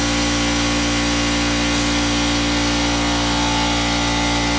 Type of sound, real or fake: real